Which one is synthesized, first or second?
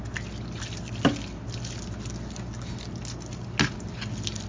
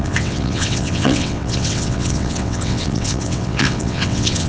second